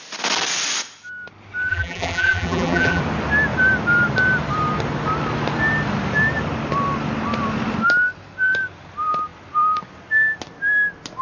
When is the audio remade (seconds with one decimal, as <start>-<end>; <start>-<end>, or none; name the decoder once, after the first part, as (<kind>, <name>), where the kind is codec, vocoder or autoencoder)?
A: 1.7-3.0 (vocoder, BigVGAN v2)